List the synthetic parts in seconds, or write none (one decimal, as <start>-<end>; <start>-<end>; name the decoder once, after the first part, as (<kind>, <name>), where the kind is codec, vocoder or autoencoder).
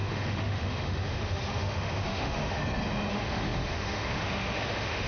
0.0-2.6 (autoencoder, DAC-VAE); 3.1-5.1